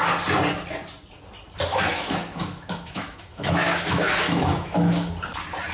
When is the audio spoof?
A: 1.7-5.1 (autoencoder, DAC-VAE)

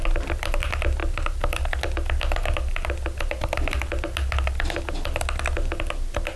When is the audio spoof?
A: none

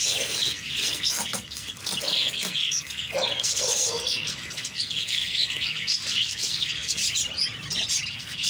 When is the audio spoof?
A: 0.0-7.0 (codec, SNAC); 8.1-8.5

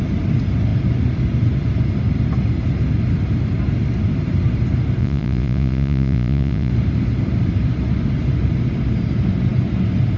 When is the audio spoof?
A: 5.0-6.7 (vocoder, Vocos)